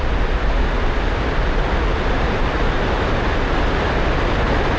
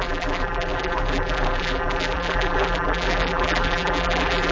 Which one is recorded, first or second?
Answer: first